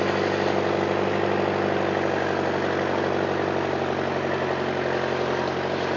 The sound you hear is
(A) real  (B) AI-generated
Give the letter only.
A